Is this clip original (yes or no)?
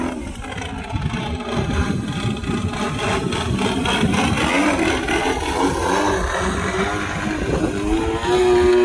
yes